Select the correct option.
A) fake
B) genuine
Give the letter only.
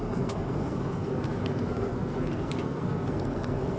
A